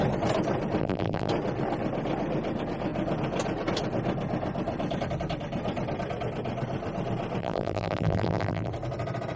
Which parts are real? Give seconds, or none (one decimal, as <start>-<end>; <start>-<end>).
0.0-0.8; 1.3-7.4; 8.7-9.4